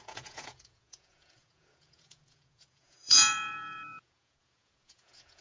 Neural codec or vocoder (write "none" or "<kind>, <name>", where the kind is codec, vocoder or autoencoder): vocoder, Vocos